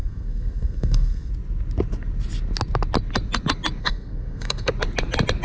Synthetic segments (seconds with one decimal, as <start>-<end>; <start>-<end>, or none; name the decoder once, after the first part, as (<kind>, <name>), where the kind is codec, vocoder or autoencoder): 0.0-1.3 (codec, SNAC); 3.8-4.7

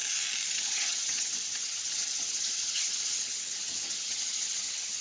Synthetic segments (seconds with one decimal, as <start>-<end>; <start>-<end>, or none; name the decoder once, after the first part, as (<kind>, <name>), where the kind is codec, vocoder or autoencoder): 0.5-5.0 (vocoder, HiFi-GAN)

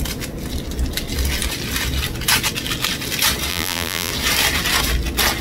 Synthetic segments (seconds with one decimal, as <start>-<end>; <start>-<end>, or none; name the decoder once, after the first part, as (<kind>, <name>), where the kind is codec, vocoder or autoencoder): 3.5-4.1 (vocoder, BigVGAN v2)

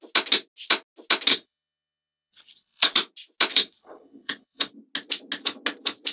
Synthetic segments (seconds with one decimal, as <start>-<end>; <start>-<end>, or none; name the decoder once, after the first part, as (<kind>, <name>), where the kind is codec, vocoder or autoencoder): 1.3-2.9 (codec, HILCodec); 3.5-4.7